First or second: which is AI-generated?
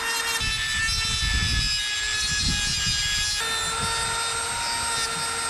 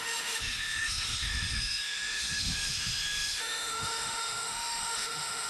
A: second